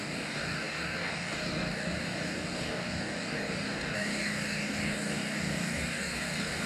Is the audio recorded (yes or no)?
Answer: no